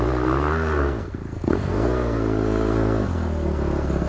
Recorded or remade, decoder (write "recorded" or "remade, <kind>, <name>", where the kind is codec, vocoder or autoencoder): remade, codec, SNAC